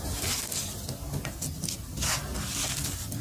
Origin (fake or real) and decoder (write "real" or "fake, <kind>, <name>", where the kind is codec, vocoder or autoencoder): real